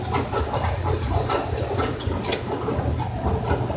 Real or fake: real